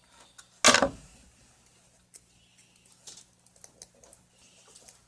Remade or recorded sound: recorded